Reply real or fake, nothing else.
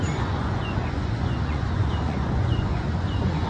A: fake